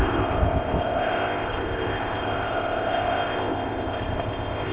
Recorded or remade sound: remade